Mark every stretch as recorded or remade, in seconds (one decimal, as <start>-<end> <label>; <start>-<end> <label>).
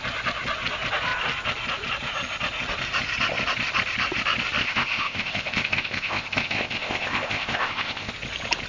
0.0-4.6 recorded; 4.6-8.1 remade; 8.1-8.7 recorded